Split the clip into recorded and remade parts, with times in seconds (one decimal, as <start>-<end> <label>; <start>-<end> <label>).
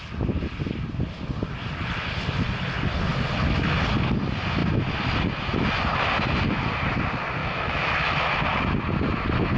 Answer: 0.0-7.4 recorded; 7.4-8.3 remade; 8.3-9.6 recorded